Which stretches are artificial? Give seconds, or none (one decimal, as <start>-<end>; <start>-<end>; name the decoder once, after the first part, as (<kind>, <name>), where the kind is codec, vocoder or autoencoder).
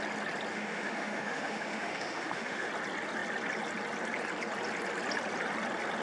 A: 0.5-2.7 (autoencoder, DAC-VAE)